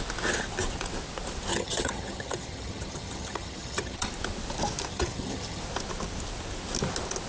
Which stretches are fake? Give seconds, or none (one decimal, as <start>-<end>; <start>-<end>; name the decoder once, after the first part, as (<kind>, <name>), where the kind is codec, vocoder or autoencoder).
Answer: 1.5-4.1 (vocoder, HiFi-GAN); 4.9-5.6